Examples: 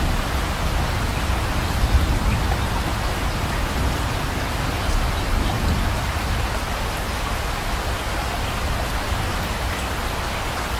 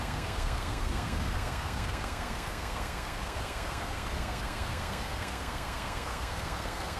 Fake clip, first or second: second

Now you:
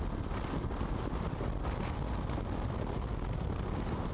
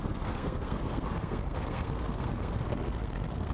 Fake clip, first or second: second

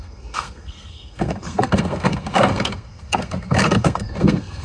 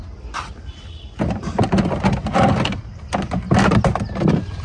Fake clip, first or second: first